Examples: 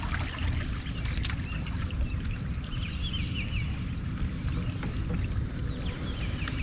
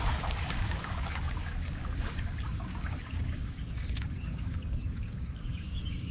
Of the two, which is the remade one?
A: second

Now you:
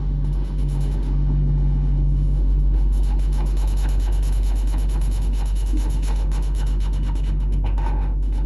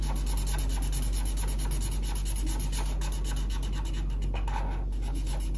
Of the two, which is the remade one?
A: first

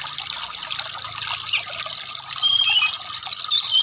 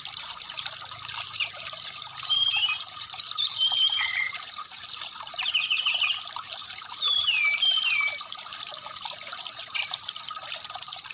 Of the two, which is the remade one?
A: second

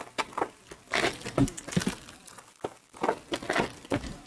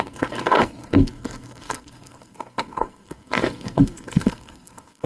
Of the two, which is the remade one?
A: second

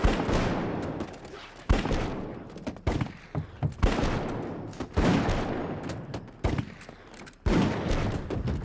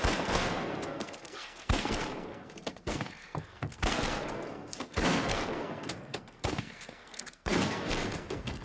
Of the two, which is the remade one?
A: second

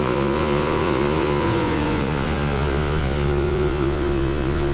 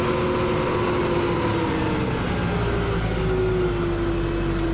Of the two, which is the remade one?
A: first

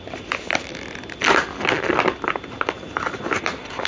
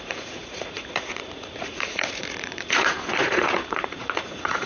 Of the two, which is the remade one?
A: second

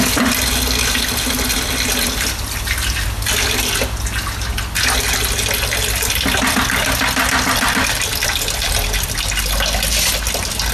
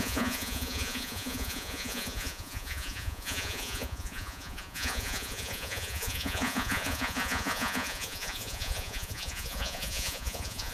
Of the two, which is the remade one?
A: second